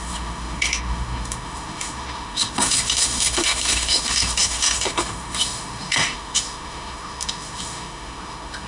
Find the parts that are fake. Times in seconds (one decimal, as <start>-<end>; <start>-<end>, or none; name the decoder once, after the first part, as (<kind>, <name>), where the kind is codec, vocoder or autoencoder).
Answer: 0.0-8.7 (autoencoder, DAC-VAE)